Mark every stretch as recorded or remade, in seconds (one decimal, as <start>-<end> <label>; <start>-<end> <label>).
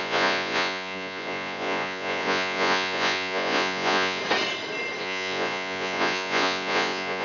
0.0-4.2 remade; 4.2-5.0 recorded; 5.0-7.2 remade